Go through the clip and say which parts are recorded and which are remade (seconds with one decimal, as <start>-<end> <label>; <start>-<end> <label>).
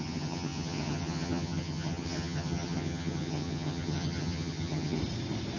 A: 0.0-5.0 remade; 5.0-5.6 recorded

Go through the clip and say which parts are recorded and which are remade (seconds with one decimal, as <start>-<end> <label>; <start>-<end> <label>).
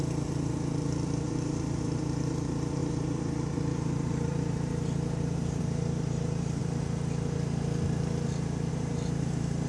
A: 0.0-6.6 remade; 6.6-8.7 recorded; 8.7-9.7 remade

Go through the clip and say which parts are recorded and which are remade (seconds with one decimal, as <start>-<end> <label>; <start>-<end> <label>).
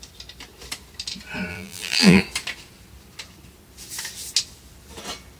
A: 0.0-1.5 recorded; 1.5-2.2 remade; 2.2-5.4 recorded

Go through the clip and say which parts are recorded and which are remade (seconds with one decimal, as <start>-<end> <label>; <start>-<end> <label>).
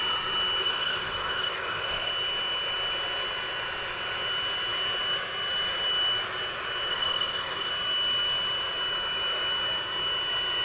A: 0.0-0.6 recorded; 0.6-2.1 remade; 2.1-6.9 recorded; 6.9-7.7 remade; 7.7-10.6 recorded